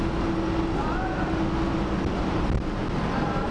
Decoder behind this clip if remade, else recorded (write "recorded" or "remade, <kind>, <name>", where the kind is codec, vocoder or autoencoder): recorded